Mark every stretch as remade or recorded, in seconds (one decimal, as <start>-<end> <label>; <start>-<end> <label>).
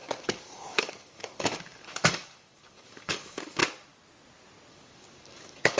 0.0-3.6 remade; 3.6-4.7 recorded; 4.7-5.8 remade